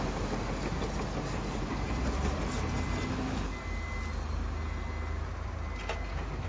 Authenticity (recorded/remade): recorded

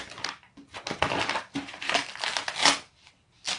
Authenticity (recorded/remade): recorded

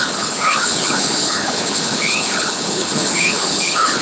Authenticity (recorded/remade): remade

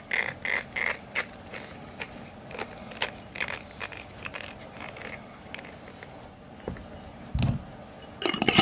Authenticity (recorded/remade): recorded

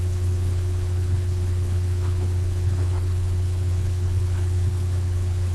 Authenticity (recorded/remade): remade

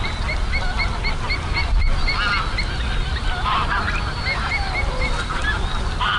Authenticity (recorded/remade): recorded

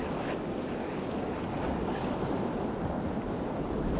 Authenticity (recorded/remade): recorded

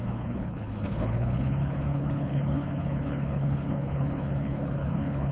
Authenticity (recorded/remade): remade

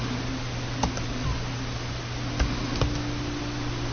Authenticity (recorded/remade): recorded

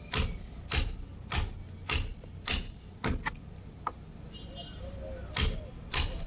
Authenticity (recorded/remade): recorded